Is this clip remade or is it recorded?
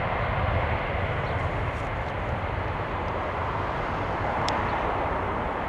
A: remade